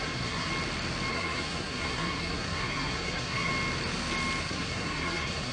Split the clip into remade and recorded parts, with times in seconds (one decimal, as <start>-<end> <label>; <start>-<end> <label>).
0.0-0.5 remade; 0.5-1.1 recorded; 1.1-3.5 remade; 3.5-4.4 recorded; 4.4-5.5 remade